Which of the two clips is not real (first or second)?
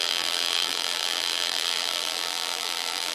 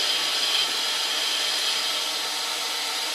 first